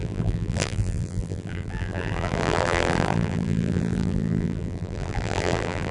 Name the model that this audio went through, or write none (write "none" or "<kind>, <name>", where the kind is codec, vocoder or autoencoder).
vocoder, BigVGAN v2